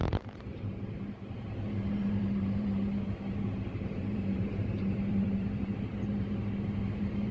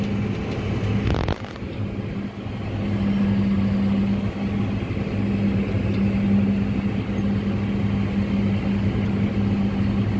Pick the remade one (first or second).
first